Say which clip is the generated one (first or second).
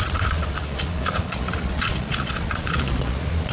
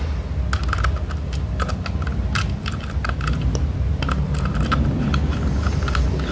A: first